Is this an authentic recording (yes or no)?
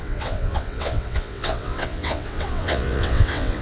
no